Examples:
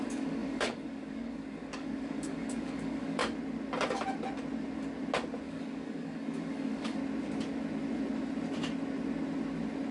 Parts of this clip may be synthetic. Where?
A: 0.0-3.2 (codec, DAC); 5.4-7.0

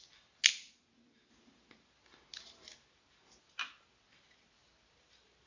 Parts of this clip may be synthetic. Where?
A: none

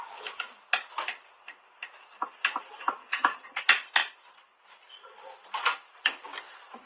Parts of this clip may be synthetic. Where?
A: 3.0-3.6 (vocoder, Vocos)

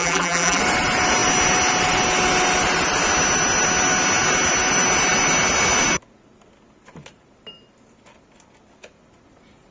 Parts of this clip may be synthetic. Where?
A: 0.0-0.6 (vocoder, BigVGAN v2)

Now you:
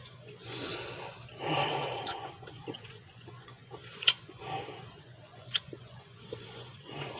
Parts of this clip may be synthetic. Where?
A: 0.0-0.7 (vocoder, Vocos); 2.0-7.2